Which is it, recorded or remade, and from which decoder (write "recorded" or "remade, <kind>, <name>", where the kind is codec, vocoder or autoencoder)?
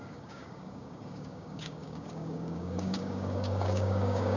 remade, codec, DAC